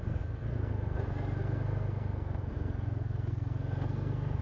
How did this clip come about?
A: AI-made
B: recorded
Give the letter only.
A